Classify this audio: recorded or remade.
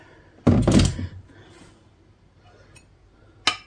recorded